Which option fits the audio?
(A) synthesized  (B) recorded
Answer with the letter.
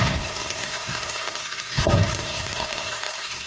A